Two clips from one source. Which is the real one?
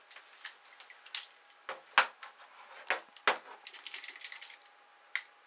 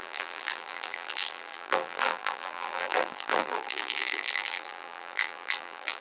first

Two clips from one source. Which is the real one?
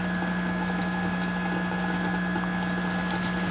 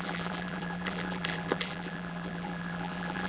first